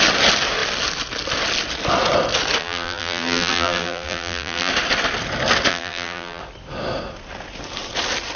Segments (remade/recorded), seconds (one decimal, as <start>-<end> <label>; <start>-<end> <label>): 0.0-2.6 recorded; 2.6-4.7 remade; 4.7-5.7 recorded; 5.7-6.4 remade; 6.4-8.4 recorded